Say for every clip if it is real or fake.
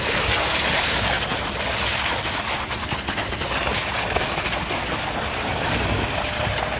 real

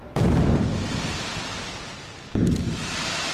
real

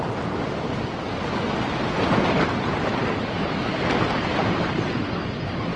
real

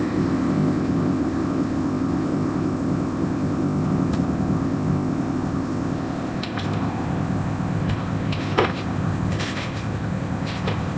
fake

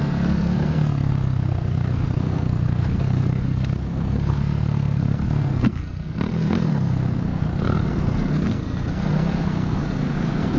fake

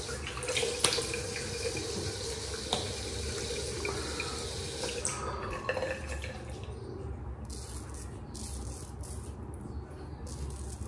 real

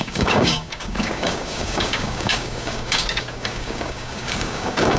fake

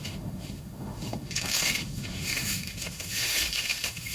fake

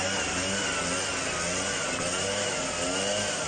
real